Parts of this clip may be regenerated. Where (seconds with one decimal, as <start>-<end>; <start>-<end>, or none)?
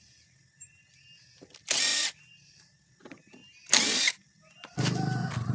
1.9-2.9